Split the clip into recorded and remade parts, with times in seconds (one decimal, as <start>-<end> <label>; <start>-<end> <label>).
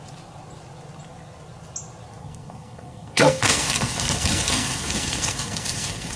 0.0-2.2 recorded; 2.2-6.2 remade